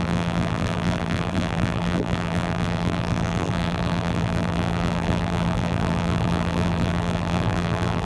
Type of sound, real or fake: fake